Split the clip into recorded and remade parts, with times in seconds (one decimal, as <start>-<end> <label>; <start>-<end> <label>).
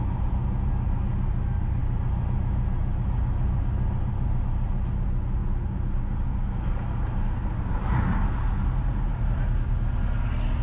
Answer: 0.0-10.6 recorded